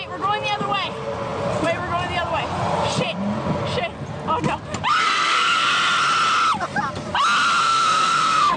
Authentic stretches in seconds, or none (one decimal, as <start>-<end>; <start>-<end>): 0.0-4.9; 5.7-7.6